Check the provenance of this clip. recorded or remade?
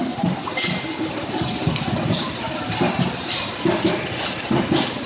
recorded